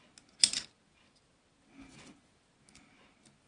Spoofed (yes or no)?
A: no